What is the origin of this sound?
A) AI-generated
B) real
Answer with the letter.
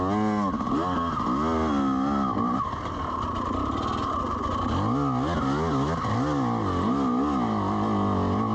B